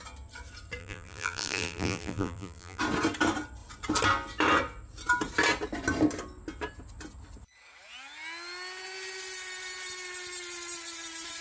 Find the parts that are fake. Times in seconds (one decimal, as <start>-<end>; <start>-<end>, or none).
0.8-2.8